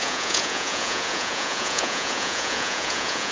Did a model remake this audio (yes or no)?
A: yes